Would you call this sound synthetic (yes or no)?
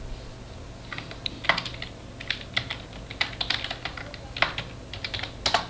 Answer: no